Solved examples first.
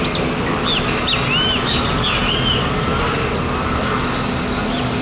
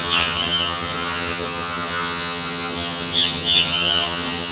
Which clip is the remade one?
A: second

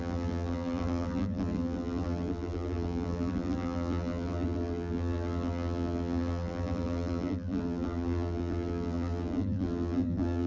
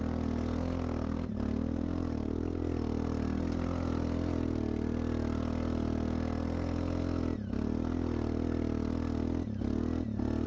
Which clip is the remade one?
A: first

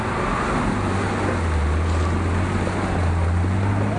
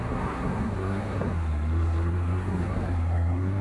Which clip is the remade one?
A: second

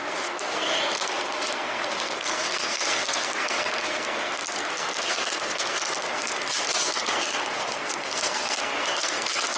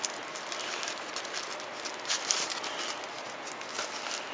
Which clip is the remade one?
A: first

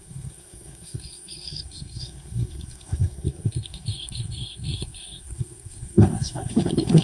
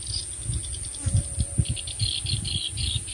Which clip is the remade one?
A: first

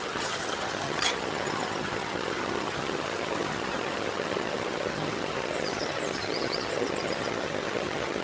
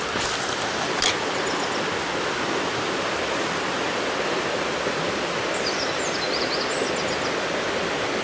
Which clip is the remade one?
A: first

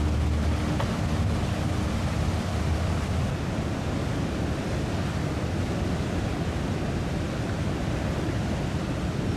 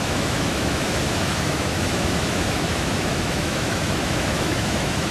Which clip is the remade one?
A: second